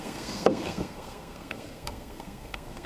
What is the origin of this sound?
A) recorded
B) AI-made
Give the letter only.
B